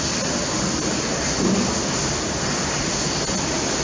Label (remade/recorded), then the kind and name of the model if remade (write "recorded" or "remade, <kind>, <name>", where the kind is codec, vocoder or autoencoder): recorded